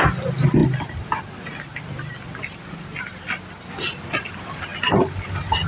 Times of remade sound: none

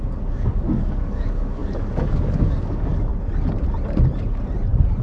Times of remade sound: 0.0-3.1

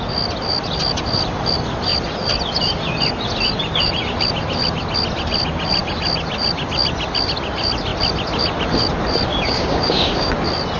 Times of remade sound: 9.3-10.3

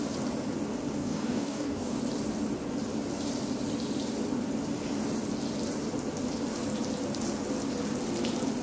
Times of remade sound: 1.0-2.0

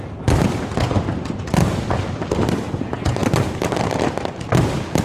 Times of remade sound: none

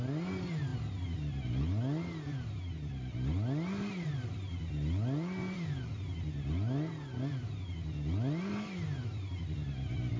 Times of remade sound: none